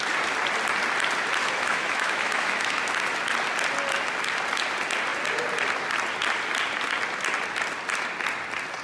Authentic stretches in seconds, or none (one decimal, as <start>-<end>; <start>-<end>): 0.0-1.4; 2.8-8.8